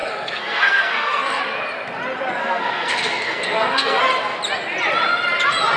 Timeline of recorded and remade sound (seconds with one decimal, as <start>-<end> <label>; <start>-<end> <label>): 0.0-1.4 remade; 1.4-2.4 recorded; 2.4-4.0 remade; 4.0-5.8 recorded